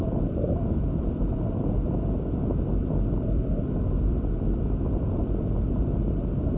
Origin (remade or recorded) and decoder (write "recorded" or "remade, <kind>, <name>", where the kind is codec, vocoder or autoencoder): remade, vocoder, BigVGAN v2